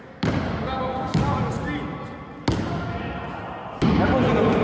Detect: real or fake real